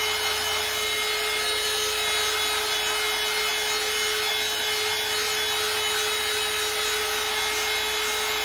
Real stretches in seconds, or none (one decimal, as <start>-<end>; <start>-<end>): 0.0-8.4